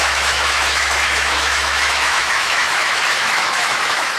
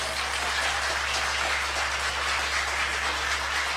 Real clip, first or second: second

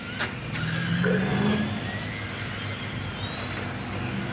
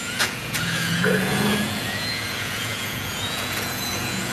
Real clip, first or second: first